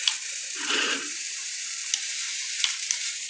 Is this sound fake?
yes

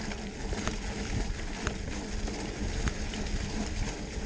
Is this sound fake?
no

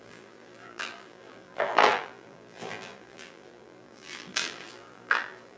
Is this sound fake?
yes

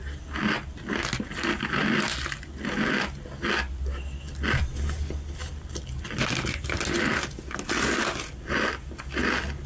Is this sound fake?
no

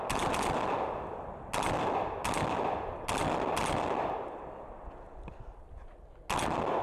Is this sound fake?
no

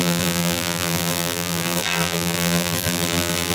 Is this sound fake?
yes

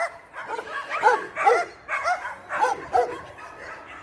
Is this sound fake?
no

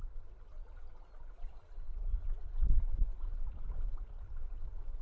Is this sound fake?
no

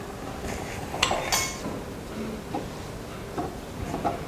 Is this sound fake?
no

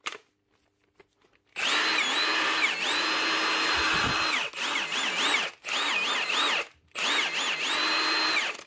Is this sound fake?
no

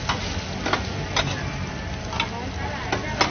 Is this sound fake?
no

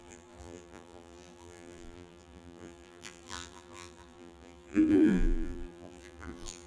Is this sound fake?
yes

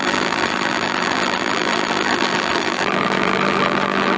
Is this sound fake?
yes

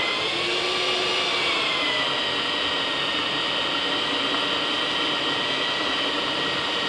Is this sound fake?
no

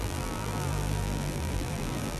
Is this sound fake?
yes